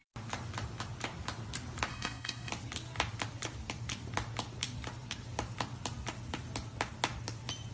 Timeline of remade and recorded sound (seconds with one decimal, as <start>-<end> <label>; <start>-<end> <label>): 0.0-1.9 recorded; 1.9-2.5 remade; 2.5-7.7 recorded